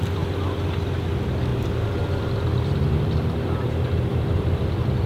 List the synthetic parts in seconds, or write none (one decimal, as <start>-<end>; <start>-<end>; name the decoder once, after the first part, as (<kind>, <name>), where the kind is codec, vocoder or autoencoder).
1.5-4.6 (vocoder, BigVGAN v2)